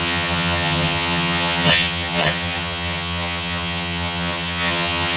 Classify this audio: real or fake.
fake